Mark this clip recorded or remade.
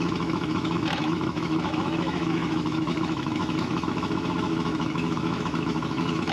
remade